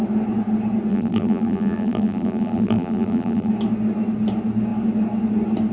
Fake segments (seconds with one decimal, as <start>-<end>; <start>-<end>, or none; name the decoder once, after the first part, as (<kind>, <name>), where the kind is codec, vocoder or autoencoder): 0.9-3.5 (vocoder, BigVGAN v2)